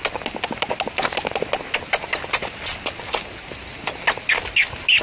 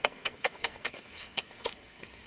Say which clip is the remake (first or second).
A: second